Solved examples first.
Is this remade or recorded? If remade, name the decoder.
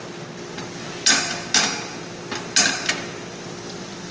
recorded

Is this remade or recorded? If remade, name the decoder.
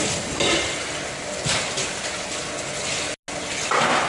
recorded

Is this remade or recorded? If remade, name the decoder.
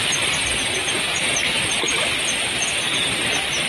recorded